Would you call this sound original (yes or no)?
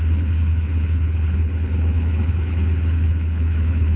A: no